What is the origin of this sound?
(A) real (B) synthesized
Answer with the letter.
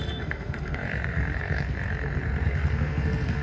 B